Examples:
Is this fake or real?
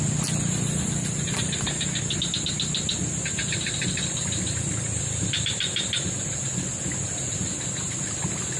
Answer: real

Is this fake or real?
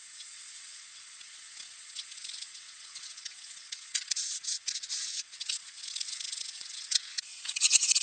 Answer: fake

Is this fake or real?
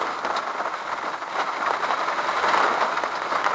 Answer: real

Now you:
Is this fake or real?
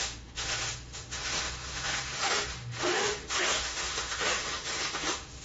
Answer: fake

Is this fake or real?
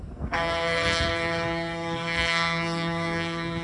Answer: fake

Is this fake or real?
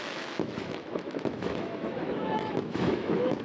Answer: fake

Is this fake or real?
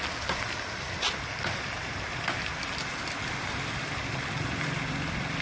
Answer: real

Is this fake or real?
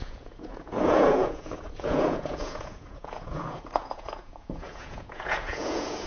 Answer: fake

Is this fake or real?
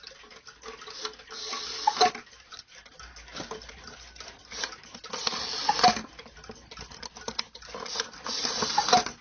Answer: real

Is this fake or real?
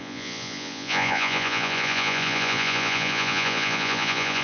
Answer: fake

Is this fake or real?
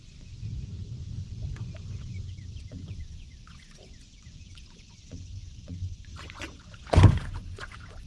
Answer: fake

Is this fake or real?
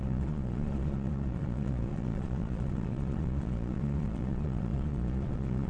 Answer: fake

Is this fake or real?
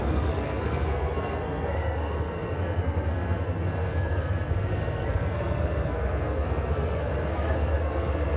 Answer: fake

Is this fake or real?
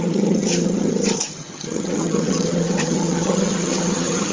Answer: fake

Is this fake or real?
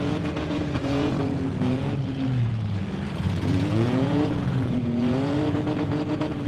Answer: fake